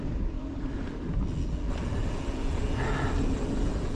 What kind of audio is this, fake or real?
real